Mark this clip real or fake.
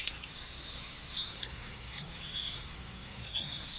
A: fake